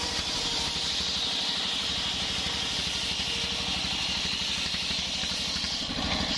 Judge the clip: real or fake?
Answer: real